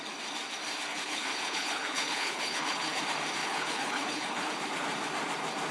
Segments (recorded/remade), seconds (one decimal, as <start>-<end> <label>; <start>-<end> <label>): 0.0-0.9 recorded; 0.9-3.0 remade; 3.0-3.4 recorded; 3.4-4.5 remade; 4.5-5.7 recorded